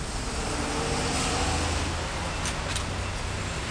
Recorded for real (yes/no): yes